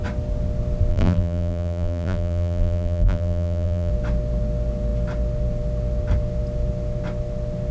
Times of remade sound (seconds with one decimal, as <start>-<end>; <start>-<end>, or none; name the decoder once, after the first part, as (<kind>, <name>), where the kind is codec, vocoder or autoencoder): 0.9-3.9 (vocoder, BigVGAN v2)